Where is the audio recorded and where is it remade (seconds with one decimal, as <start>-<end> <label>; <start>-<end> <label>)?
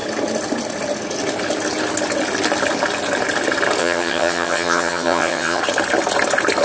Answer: 0.0-3.8 recorded; 3.8-5.6 remade; 5.6-6.6 recorded